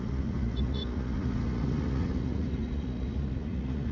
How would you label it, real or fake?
fake